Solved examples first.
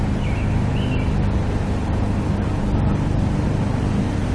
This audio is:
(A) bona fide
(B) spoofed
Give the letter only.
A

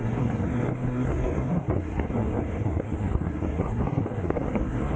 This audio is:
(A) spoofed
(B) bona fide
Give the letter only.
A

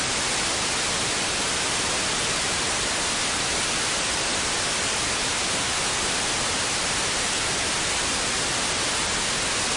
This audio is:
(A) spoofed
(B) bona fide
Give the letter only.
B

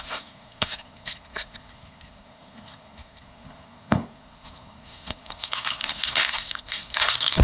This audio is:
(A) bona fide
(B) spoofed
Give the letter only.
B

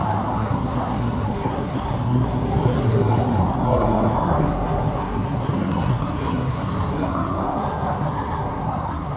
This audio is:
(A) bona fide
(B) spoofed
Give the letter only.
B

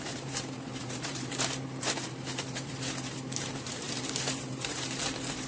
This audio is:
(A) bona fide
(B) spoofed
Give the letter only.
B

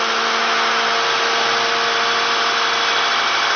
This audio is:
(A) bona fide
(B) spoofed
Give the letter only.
A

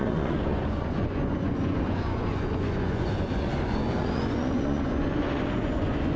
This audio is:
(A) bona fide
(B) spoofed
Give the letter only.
B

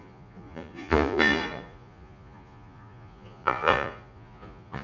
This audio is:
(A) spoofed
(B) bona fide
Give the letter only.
A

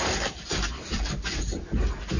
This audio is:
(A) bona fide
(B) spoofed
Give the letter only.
A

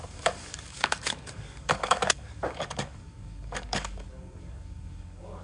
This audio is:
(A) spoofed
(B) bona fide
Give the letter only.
A